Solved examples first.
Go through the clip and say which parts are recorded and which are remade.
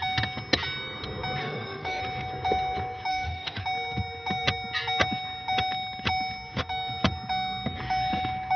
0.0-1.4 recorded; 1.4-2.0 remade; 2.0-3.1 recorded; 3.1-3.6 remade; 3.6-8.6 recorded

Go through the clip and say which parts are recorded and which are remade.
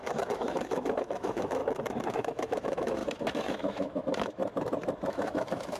0.0-1.6 remade; 1.6-2.1 recorded; 2.1-4.4 remade; 4.4-5.1 recorded; 5.1-5.8 remade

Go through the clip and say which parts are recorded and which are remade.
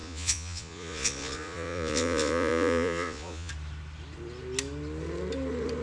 0.0-3.5 remade; 3.5-5.8 recorded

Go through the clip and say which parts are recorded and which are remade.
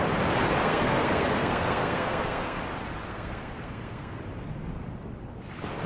0.0-0.6 recorded; 0.6-2.6 remade; 2.6-3.0 recorded; 3.0-4.2 remade; 4.2-5.9 recorded